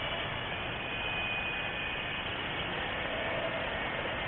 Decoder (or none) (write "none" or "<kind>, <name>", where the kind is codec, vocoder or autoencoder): none